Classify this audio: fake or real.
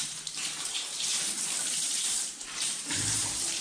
fake